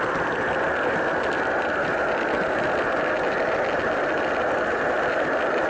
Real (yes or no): yes